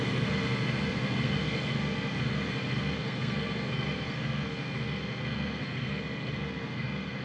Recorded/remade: remade